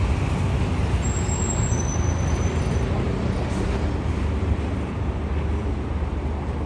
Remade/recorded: recorded